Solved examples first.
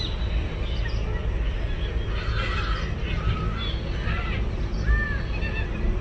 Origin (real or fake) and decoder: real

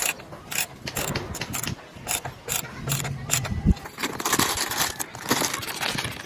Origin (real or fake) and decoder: real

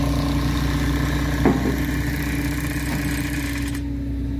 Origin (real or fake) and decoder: real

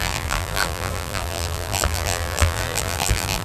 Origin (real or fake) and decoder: fake, vocoder, BigVGAN v2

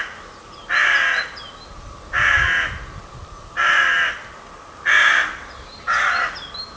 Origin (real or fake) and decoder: real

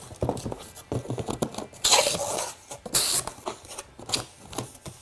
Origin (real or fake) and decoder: real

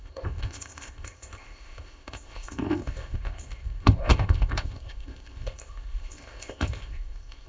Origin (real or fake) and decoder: fake, codec, ZipCodec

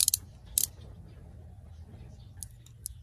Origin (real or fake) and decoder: real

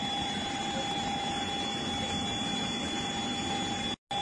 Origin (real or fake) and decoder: real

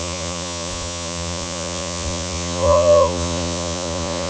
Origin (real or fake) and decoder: fake, vocoder, Vocos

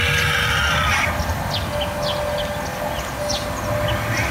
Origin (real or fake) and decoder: real